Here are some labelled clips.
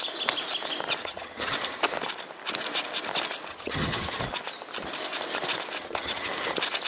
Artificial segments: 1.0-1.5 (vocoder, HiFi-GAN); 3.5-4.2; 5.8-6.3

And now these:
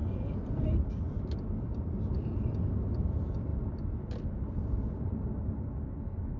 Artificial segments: none